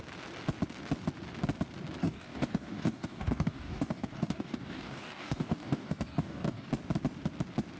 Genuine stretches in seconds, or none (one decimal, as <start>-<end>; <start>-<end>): 0.0-2.0; 6.7-7.8